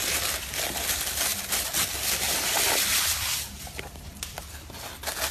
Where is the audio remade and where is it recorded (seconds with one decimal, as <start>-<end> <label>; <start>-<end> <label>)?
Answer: 0.0-5.3 remade